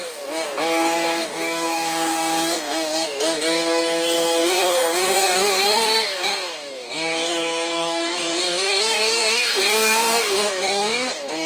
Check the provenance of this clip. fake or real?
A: fake